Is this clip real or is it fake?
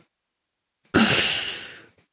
real